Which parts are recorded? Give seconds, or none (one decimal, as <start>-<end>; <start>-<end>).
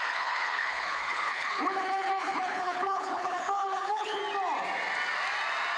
4.2-5.8